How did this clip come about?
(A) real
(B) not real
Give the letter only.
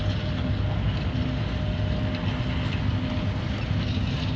A